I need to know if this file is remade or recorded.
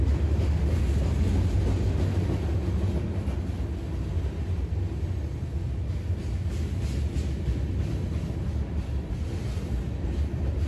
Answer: recorded